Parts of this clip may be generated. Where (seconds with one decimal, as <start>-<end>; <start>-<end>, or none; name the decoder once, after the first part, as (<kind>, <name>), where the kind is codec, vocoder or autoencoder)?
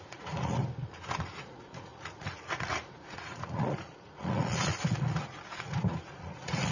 0.0-0.6 (vocoder, Vocos); 1.2-6.7